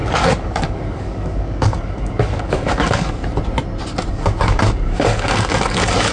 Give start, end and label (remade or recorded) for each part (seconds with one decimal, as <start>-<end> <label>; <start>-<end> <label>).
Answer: 0.0-3.2 remade; 3.2-4.1 recorded; 4.1-6.1 remade